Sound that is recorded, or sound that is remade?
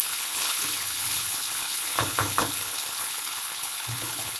remade